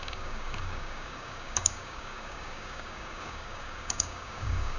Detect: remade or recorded remade